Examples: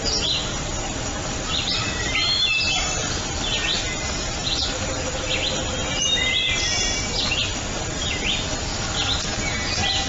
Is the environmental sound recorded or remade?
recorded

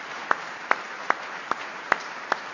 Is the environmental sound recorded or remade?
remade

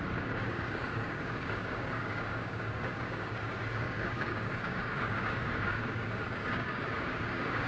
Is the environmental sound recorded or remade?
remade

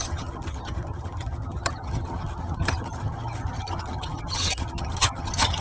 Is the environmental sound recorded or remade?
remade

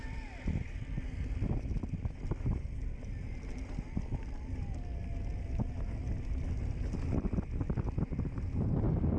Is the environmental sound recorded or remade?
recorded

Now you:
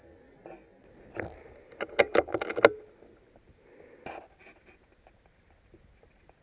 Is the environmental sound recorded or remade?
recorded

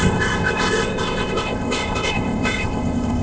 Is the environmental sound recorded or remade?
remade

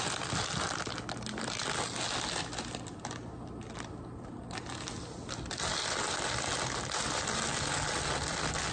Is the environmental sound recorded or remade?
recorded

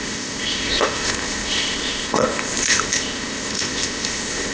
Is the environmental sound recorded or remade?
remade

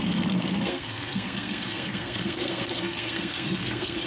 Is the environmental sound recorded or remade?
remade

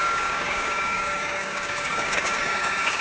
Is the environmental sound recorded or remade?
remade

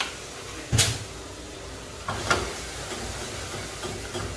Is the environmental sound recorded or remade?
recorded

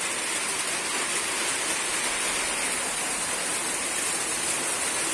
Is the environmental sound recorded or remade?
recorded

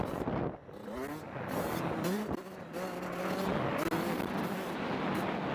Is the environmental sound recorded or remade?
recorded